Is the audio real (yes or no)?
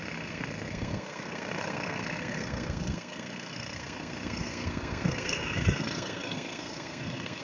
no